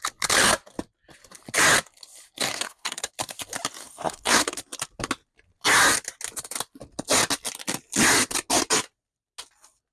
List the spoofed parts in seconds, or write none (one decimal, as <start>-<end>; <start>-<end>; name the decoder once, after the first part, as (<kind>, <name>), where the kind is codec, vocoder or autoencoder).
2.5-3.1 (codec, SNAC); 3.8-4.6